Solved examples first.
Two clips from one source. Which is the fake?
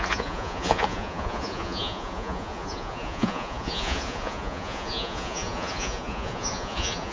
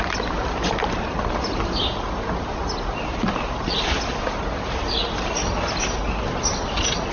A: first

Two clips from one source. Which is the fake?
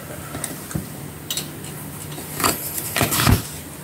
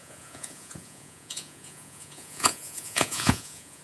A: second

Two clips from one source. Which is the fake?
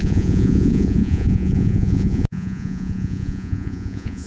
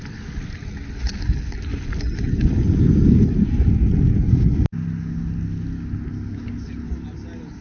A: first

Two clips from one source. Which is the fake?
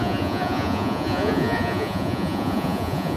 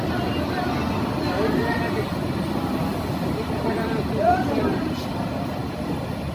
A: first